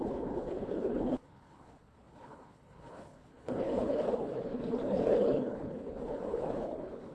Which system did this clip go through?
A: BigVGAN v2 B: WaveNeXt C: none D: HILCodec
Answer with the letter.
D